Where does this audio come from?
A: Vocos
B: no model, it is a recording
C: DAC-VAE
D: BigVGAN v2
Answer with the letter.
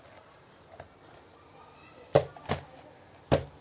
B